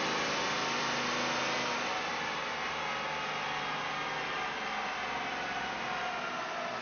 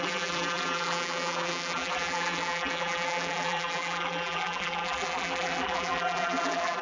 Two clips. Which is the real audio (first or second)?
first